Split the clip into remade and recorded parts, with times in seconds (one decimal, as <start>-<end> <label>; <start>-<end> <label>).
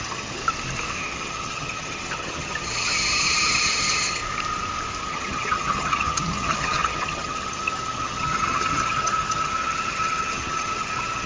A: 0.0-0.4 remade; 0.4-1.0 recorded; 1.0-4.2 remade; 4.2-5.0 recorded; 5.0-11.3 remade